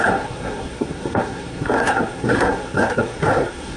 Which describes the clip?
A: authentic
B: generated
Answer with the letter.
B